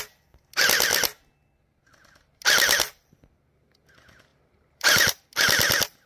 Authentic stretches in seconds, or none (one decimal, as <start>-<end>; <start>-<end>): 0.0-4.3; 5.2-6.1